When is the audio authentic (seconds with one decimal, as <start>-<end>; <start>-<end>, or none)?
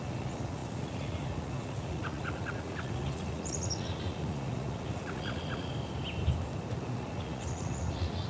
5.7-6.7